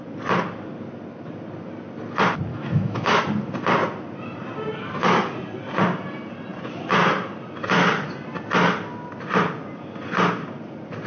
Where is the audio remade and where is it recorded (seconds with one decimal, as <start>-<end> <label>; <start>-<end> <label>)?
0.0-2.5 recorded; 2.5-3.2 remade; 3.2-11.1 recorded